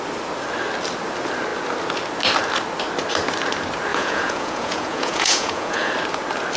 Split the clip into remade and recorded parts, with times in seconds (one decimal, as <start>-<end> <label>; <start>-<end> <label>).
0.0-3.9 recorded; 3.9-5.9 remade; 5.9-6.6 recorded